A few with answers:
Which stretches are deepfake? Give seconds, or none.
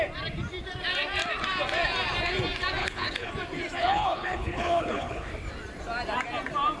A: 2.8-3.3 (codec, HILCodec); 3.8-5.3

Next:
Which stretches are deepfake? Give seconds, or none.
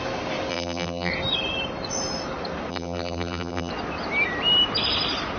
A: 0.5-1.1 (vocoder, BigVGAN v2); 2.7-3.7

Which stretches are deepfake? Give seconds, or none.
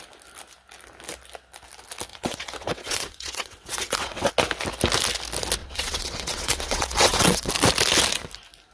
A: 2.1-4.3 (vocoder, WaveNeXt); 5.6-7.5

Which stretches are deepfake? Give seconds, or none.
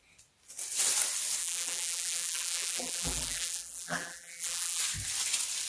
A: 1.4-4.8 (vocoder, BigVGAN v2)